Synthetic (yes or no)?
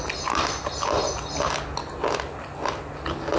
no